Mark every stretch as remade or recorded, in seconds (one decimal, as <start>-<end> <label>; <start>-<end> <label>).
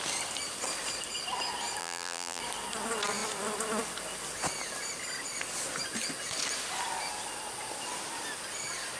0.0-1.8 recorded; 1.8-2.4 remade; 2.4-9.0 recorded